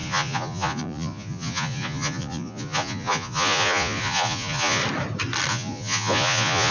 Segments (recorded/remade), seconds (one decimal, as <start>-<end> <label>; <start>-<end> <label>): 0.0-4.8 remade; 4.8-5.5 recorded; 5.5-6.7 remade